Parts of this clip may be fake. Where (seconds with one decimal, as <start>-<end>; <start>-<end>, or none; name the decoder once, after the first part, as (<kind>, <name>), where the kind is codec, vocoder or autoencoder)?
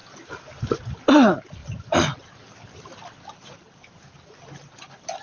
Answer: none